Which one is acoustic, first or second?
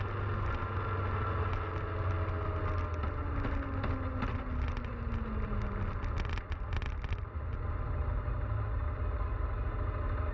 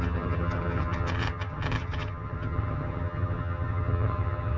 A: first